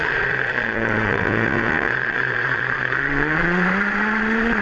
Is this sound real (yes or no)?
no